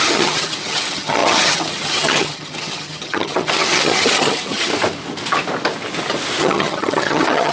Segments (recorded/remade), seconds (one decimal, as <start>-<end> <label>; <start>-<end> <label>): 0.0-4.7 remade; 4.7-6.4 recorded; 6.4-7.5 remade